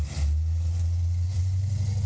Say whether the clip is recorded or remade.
recorded